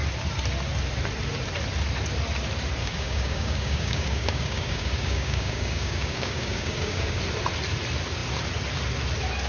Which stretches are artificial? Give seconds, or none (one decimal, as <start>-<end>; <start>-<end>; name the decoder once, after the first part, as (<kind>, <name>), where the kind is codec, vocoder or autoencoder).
2.8-7.2 (codec, DAC)